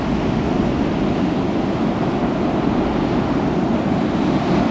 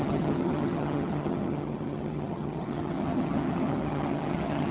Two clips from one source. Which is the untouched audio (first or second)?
first